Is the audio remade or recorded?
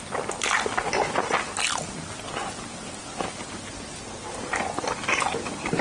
recorded